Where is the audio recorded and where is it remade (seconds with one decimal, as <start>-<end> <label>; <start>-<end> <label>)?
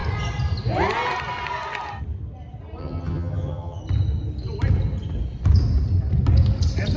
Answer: 0.0-2.8 recorded; 2.8-3.8 remade; 3.8-7.0 recorded